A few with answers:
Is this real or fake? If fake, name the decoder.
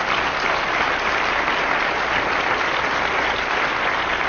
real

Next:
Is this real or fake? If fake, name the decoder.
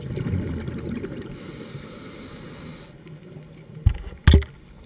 real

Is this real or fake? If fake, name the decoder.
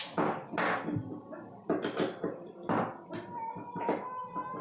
real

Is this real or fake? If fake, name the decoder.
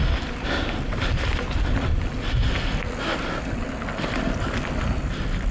real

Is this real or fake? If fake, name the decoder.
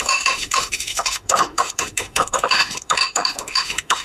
fake, autoencoder, DAC-VAE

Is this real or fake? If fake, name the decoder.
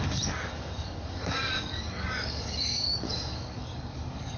fake, codec, DAC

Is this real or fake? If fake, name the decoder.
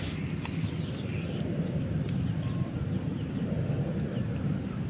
real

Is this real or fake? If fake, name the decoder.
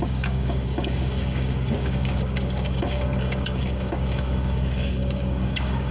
fake, codec, DAC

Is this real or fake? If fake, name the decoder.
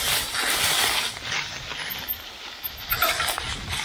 real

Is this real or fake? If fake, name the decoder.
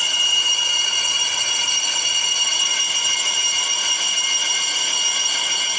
real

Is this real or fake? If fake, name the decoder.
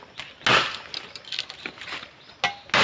real